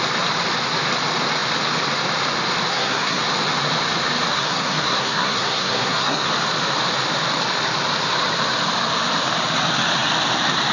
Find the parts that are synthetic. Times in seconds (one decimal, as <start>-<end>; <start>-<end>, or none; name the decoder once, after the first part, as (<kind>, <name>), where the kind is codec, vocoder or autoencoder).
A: 2.7-3.2 (codec, SNAC); 4.3-6.3